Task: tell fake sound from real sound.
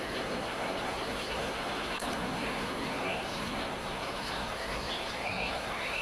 fake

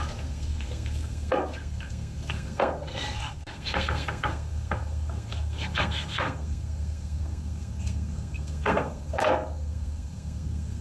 fake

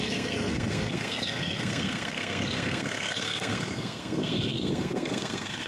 fake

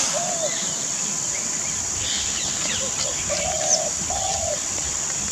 real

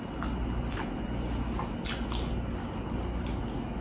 real